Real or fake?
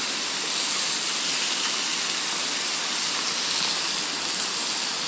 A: real